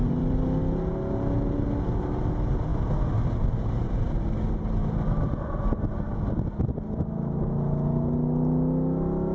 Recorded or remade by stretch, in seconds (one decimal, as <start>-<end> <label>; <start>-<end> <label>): 0.0-0.6 remade; 0.6-4.8 recorded; 4.8-5.7 remade; 5.7-9.3 recorded